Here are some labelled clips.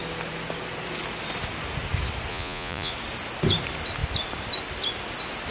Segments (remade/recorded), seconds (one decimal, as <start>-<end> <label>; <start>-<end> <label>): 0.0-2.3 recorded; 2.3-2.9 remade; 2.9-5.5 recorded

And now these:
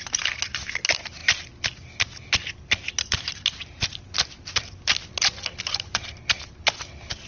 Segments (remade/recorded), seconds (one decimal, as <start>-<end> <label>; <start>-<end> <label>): 0.0-7.3 recorded

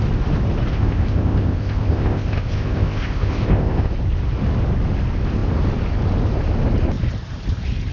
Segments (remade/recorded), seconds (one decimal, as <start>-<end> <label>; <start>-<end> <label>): 0.0-0.7 recorded; 0.7-3.9 remade; 3.9-7.9 recorded

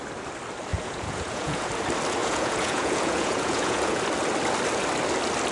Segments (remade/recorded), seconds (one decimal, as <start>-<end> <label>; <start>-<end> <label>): 0.0-0.7 recorded; 0.7-1.7 remade; 1.7-2.2 recorded; 2.2-4.0 remade; 4.0-5.5 recorded

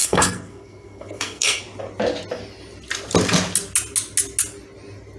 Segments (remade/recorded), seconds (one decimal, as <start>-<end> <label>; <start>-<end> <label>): 0.0-1.6 remade; 1.6-5.2 recorded